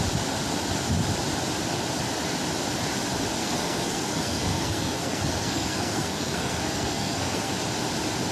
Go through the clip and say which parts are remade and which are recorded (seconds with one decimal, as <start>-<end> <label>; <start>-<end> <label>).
0.0-3.4 recorded; 3.4-7.5 remade; 7.5-8.3 recorded